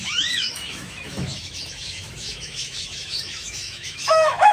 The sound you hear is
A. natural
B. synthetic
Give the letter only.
B